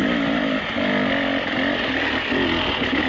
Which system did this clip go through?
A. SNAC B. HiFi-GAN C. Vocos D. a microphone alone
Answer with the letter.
D